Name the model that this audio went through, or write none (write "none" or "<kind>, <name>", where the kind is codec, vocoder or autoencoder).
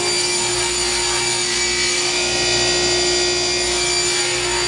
none